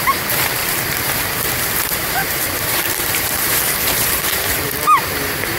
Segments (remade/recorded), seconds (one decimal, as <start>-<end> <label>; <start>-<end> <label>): 0.0-0.6 recorded; 0.6-1.2 remade; 1.2-2.2 recorded; 2.2-4.7 remade; 4.7-5.6 recorded